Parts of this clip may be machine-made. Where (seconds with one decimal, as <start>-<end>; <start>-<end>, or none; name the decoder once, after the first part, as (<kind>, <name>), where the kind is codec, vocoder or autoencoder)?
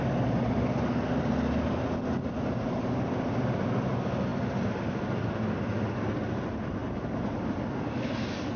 none